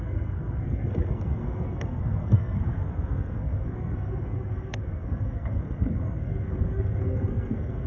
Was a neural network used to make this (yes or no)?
yes